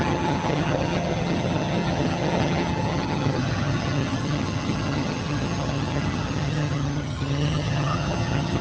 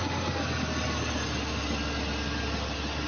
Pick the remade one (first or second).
first